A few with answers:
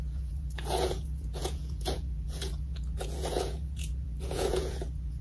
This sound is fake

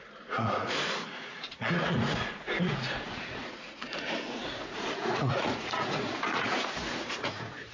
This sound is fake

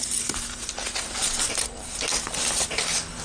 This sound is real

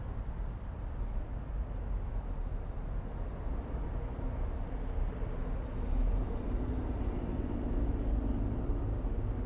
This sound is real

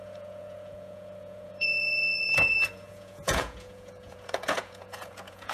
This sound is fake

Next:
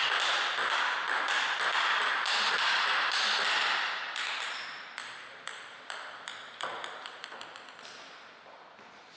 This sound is real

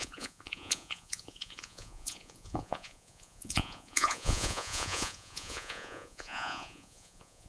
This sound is fake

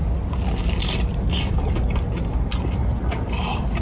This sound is real